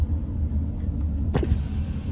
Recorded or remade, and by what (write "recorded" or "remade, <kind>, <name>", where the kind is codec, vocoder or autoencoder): recorded